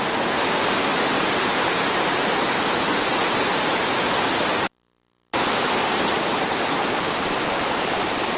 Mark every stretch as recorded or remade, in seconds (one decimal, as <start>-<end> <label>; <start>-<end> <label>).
0.0-8.4 remade

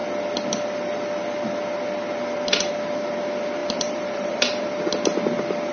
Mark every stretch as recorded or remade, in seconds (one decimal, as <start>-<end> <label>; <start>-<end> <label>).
0.0-3.6 recorded; 3.6-4.8 remade; 4.8-5.7 recorded

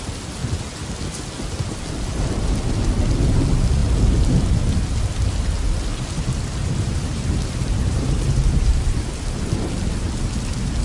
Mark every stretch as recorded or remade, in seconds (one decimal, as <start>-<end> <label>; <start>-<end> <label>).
0.0-6.6 recorded; 6.6-9.1 remade; 9.1-10.8 recorded

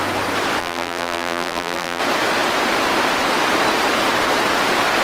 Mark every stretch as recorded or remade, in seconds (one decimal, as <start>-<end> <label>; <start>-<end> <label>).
0.0-0.6 recorded; 0.6-2.0 remade; 2.0-5.0 recorded

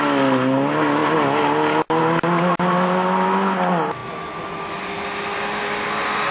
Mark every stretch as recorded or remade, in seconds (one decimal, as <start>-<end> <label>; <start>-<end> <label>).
0.0-6.3 recorded

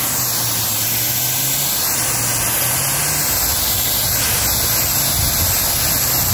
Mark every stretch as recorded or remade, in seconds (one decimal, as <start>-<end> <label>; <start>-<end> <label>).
0.0-6.3 recorded